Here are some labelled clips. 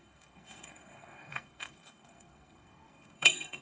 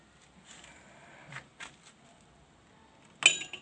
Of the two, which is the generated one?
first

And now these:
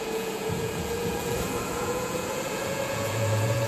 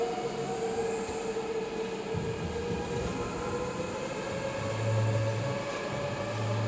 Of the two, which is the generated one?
first